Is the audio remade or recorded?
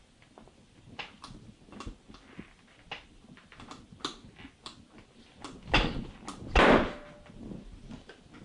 recorded